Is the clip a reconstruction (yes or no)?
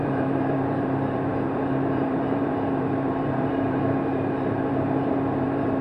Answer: yes